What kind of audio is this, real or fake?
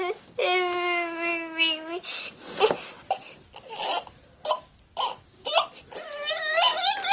real